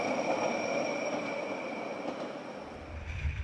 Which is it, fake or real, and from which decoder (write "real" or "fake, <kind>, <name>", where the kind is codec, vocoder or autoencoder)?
fake, vocoder, BigVGAN v2